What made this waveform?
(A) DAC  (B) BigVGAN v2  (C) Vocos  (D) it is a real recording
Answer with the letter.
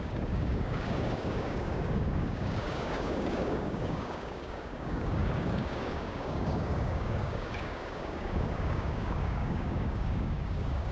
A